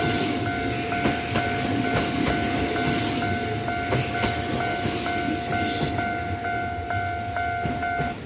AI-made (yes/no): no